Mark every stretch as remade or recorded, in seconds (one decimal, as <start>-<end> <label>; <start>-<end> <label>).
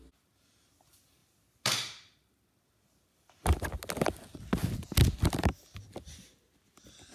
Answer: 0.0-7.1 recorded